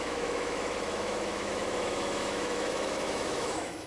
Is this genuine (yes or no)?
no